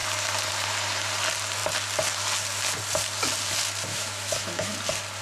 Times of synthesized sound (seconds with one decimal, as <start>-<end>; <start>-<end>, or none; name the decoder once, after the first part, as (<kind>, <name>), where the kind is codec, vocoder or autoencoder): 3.9-4.7 (autoencoder, DAC-VAE)